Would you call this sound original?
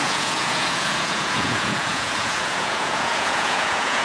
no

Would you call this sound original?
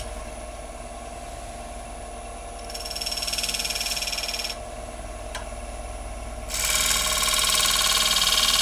yes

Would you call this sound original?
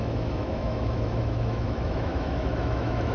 no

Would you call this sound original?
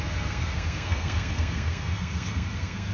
no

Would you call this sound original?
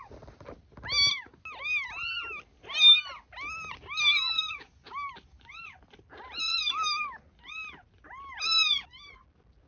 yes